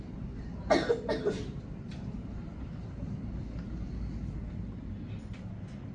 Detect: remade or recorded recorded